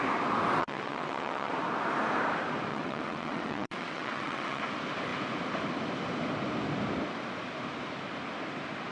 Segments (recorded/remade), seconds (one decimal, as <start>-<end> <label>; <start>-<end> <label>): 0.0-0.6 recorded; 0.6-1.5 remade; 1.5-2.7 recorded; 2.7-4.6 remade; 4.6-8.9 recorded

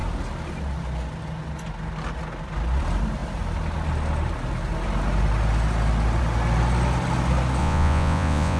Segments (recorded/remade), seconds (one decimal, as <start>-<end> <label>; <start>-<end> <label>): 0.0-7.6 recorded; 7.6-8.6 remade

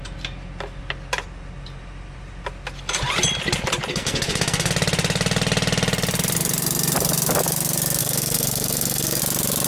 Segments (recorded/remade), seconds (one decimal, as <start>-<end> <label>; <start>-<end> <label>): 0.0-3.9 recorded; 3.9-4.7 remade; 4.7-8.0 recorded; 8.0-9.2 remade; 9.2-9.7 recorded

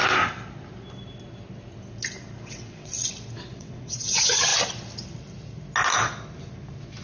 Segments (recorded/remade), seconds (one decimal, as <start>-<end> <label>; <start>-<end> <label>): 0.0-2.4 recorded; 2.4-2.9 remade; 2.9-3.5 recorded; 3.5-4.5 remade; 4.5-7.0 recorded

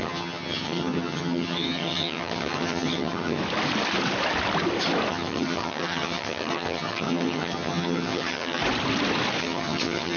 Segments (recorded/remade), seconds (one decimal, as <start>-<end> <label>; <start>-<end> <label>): 0.0-3.4 remade; 3.4-5.1 recorded; 5.1-8.6 remade; 8.6-9.4 recorded; 9.4-10.2 remade

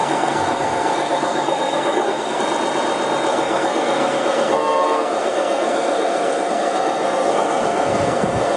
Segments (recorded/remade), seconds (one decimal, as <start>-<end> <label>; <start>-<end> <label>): 0.0-2.4 remade; 2.4-3.3 recorded; 3.3-8.6 remade

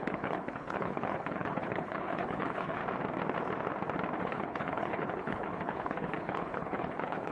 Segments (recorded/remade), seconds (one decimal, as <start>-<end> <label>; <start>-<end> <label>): 0.0-2.8 remade; 2.8-4.2 recorded; 4.2-7.3 remade

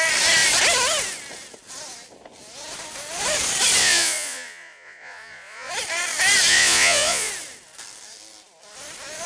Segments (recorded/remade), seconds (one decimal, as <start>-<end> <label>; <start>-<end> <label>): 0.0-3.8 recorded; 3.8-5.7 remade; 5.7-6.5 recorded; 6.5-7.3 remade; 7.3-9.3 recorded